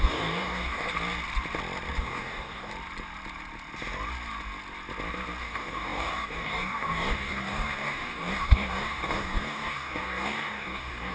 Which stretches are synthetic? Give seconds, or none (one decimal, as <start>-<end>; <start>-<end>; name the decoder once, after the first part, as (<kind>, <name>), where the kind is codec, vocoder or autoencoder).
0.0-0.9 (codec, DAC); 2.0-2.7; 5.4-11.1